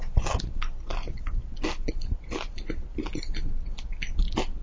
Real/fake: real